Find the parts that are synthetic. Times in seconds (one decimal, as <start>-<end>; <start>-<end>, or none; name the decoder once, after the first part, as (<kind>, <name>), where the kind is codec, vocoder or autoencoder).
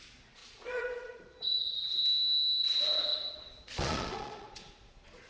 0.0-2.0 (vocoder, Vocos); 2.6-5.3